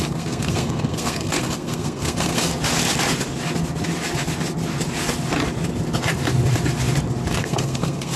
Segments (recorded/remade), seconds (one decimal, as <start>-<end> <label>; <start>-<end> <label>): 0.0-2.5 remade; 2.5-7.4 recorded; 7.4-8.2 remade